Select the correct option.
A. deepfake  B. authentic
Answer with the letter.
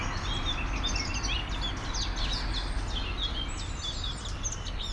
B